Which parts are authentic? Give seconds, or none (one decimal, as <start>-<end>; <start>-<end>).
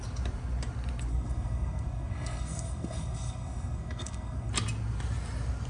0.0-1.1; 4.5-5.7